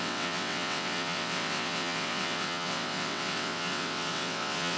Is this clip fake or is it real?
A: fake